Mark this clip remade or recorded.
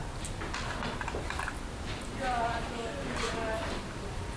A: recorded